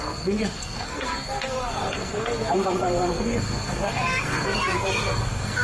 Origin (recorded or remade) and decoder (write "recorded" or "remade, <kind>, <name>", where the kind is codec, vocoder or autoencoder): remade, codec, SNAC